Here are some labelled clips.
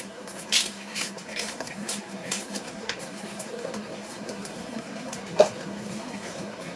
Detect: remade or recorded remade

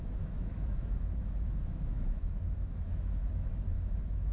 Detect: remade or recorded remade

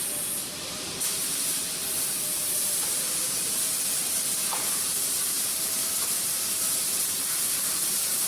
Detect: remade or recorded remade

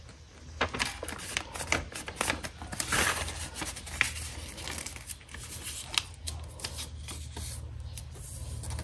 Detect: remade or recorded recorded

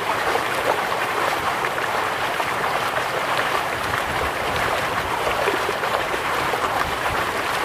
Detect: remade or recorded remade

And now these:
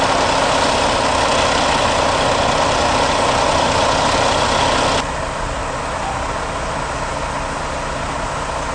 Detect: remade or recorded recorded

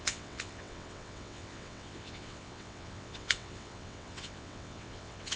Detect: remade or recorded remade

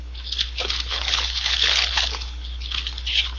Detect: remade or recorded remade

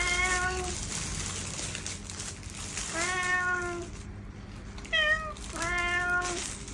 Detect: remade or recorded recorded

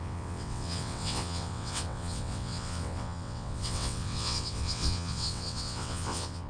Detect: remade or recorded remade